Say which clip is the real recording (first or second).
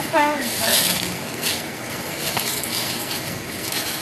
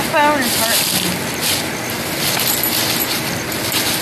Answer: second